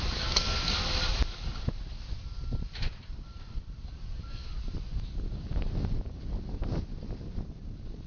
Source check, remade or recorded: recorded